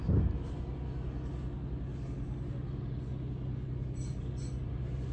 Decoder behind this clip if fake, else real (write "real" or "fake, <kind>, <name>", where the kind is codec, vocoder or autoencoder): real